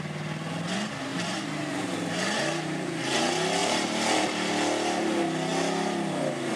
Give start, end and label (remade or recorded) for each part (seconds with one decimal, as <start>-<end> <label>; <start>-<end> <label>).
0.0-1.1 recorded; 1.1-3.0 remade; 3.0-3.6 recorded; 3.6-4.5 remade; 4.5-6.6 recorded